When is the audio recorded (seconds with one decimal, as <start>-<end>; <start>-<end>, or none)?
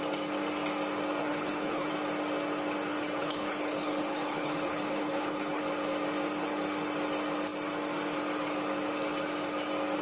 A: 0.0-1.2; 1.9-2.9; 5.6-10.0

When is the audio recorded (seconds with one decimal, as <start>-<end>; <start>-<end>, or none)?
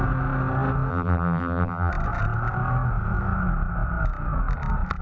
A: 0.0-0.9; 1.9-5.0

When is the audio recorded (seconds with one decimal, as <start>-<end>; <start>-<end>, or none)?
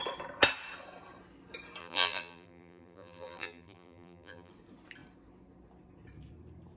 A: 0.0-1.8; 4.5-6.8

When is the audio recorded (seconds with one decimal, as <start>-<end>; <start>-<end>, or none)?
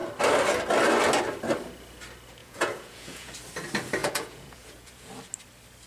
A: 0.0-2.4; 3.3-4.0; 5.1-5.9